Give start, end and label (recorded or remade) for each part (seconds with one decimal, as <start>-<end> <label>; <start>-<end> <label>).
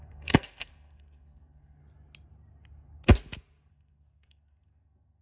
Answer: 0.0-1.8 remade; 1.8-3.7 recorded; 3.7-5.2 remade